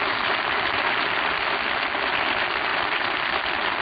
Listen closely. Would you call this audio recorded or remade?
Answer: recorded